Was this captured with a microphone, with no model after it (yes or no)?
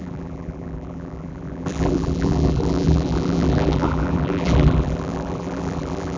no